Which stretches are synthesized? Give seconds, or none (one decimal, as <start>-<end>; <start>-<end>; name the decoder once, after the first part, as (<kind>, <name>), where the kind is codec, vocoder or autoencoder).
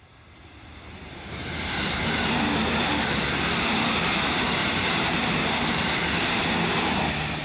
0.5-2.0 (vocoder, BigVGAN v2); 4.6-6.5